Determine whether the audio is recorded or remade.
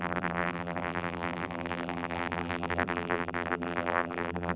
remade